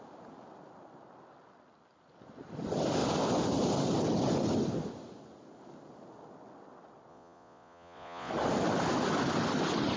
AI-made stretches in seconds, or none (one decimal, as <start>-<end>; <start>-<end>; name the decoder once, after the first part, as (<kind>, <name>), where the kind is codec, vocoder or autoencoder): 7.1-8.3 (vocoder, Vocos)